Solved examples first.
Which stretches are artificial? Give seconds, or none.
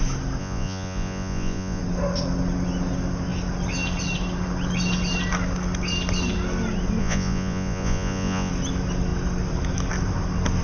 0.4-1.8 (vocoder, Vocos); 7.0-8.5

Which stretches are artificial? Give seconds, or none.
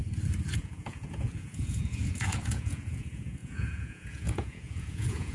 0.5-5.3 (vocoder, Vocos)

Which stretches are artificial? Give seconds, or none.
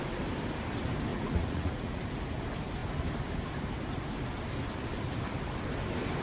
1.1-2.0 (vocoder, Vocos)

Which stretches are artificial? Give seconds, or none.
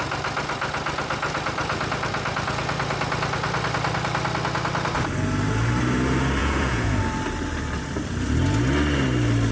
6.4-7.0 (vocoder, Vocos)